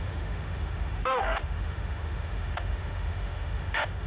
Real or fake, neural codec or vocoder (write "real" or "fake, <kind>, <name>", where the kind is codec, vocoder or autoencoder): fake, autoencoder, DAC-VAE